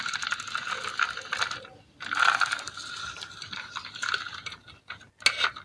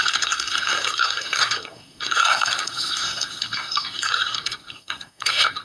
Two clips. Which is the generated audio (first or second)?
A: second